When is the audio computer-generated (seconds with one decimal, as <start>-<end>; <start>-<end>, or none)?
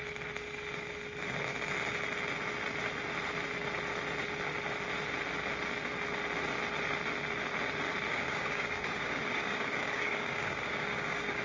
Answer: 8.1-11.4